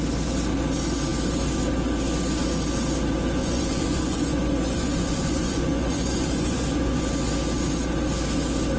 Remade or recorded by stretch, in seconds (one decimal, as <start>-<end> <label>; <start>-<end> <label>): 0.0-3.4 recorded; 3.4-7.0 remade; 7.0-8.8 recorded